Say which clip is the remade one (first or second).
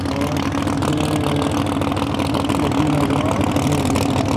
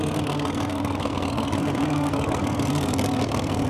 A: second